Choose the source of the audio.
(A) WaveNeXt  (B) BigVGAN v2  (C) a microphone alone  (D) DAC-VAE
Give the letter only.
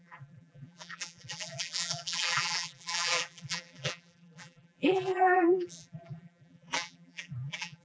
B